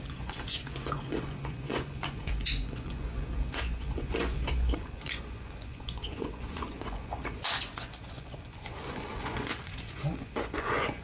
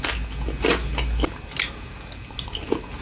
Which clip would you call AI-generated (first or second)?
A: first